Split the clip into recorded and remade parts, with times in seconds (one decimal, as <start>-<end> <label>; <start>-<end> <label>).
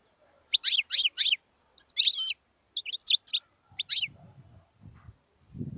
0.0-1.9 remade; 1.9-2.8 recorded; 2.8-3.9 remade; 3.9-5.8 recorded